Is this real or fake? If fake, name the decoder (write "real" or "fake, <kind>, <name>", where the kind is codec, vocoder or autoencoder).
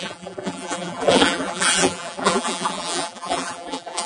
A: fake, vocoder, BigVGAN v2